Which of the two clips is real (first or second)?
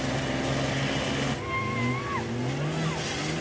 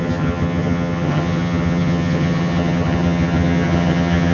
first